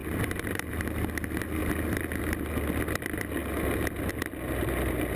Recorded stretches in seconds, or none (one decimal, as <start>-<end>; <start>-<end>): 1.1-5.2